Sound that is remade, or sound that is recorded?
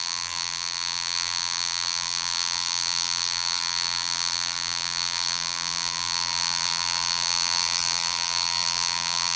remade